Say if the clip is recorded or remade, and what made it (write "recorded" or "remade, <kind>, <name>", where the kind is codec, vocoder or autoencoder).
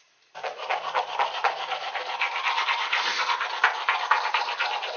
recorded